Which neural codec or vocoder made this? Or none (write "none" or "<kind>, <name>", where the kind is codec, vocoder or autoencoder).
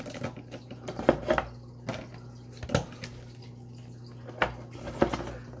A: none